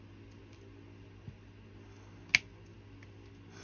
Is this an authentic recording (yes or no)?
yes